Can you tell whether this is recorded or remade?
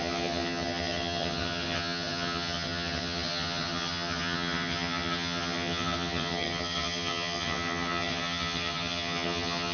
remade